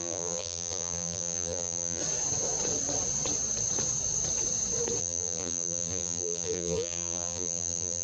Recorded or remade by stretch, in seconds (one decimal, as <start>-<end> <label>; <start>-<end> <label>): 0.0-2.0 remade; 2.0-5.0 recorded; 5.0-8.0 remade